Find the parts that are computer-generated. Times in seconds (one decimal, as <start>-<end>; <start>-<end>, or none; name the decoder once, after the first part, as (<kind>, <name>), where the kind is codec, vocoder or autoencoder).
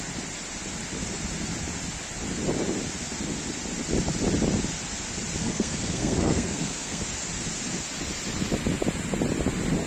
5.4-7.0 (codec, SNAC)